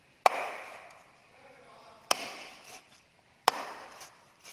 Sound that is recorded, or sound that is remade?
remade